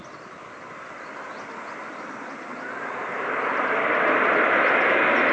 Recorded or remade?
recorded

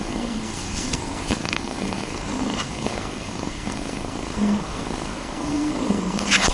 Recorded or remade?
remade